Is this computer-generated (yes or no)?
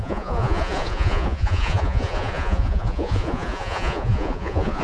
yes